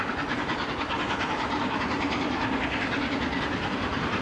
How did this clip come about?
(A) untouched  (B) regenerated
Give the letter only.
A